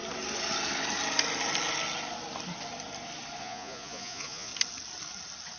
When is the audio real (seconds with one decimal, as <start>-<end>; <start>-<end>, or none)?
0.0-3.4; 4.5-5.6